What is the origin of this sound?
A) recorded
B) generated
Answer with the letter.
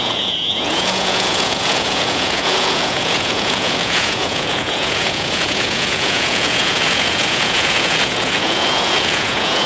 B